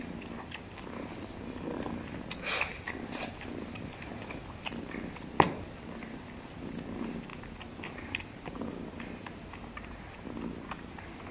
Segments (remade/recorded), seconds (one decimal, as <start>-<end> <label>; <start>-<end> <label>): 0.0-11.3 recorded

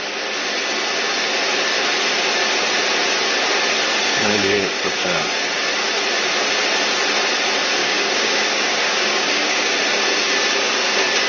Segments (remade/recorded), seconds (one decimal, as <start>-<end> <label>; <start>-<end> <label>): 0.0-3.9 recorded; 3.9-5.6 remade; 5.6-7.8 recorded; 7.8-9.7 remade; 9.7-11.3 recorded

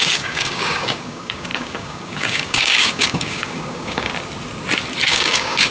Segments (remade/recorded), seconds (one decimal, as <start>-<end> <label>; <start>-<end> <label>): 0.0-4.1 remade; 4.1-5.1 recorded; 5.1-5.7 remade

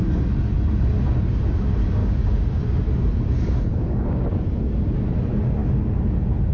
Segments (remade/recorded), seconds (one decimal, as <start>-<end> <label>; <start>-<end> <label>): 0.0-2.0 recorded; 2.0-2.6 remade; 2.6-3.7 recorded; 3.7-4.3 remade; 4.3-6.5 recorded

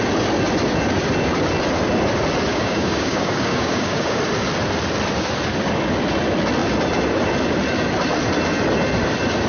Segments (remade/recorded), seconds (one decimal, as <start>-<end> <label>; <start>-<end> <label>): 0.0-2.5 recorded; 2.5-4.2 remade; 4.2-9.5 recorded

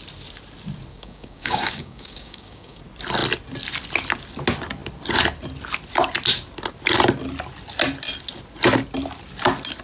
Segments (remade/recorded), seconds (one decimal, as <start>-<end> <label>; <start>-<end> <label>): 0.0-0.9 recorded; 0.9-2.8 remade; 2.8-9.8 recorded